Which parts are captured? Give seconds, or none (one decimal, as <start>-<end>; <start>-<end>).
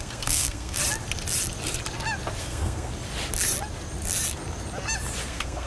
0.8-2.4; 2.9-5.3